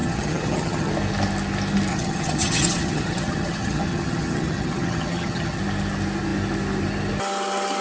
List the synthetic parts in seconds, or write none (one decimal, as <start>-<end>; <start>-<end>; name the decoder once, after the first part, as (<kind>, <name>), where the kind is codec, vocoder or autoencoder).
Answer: 0.0-0.9 (vocoder, HiFi-GAN); 1.9-5.6